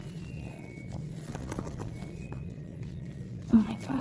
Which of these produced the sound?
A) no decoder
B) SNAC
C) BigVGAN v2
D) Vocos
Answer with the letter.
D